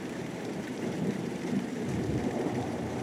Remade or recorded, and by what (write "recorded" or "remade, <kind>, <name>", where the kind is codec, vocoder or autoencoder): remade, vocoder, BigVGAN v2